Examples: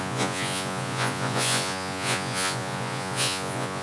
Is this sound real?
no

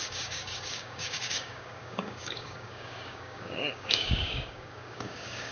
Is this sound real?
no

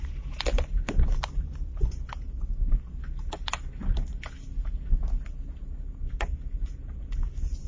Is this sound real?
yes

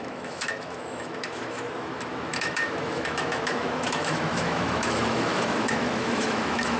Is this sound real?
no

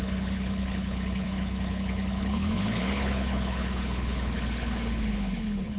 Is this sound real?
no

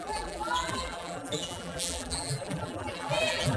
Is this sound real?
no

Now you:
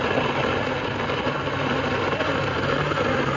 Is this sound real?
yes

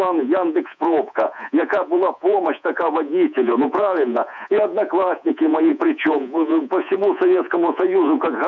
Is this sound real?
no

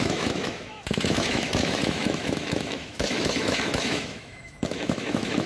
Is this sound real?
no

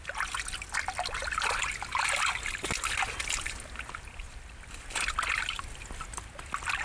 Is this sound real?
yes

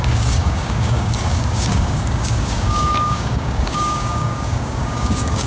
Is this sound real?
no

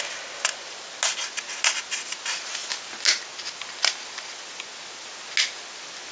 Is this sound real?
yes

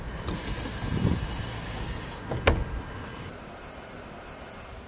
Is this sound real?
yes